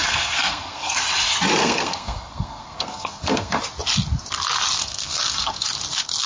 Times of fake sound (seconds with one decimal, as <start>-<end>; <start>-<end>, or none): 0.0-1.0; 1.6-3.6; 4.8-5.7